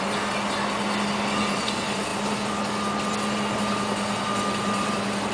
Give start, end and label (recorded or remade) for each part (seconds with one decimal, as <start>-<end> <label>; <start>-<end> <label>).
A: 0.0-5.3 recorded

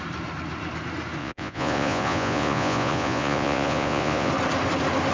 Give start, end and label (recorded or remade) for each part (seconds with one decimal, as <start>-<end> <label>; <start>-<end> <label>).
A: 0.0-1.2 recorded; 1.2-4.3 remade; 4.3-5.1 recorded

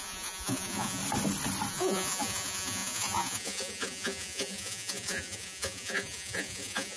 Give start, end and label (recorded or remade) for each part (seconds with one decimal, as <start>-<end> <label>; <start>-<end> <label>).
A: 0.0-1.0 remade; 1.0-1.7 recorded; 1.7-7.0 remade

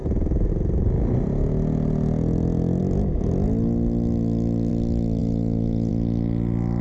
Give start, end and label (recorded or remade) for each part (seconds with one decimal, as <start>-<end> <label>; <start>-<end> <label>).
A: 0.0-0.5 remade; 0.5-5.2 recorded; 5.2-5.9 remade; 5.9-6.8 recorded

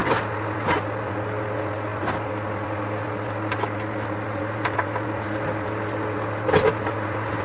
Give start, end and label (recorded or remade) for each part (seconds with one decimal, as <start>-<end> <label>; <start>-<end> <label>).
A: 0.0-7.4 recorded